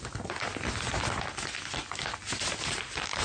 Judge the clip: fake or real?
real